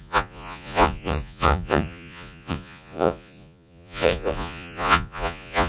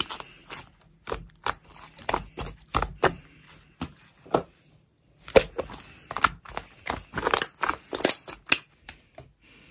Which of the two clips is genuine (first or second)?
second